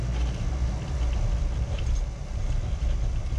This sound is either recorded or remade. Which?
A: remade